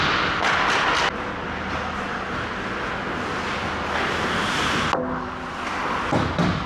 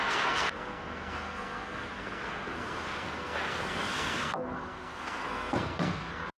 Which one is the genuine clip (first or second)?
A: first